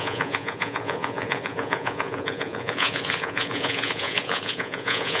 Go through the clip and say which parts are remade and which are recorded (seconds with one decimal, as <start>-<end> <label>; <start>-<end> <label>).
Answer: 0.0-5.2 remade